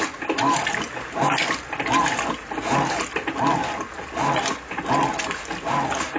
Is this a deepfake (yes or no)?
no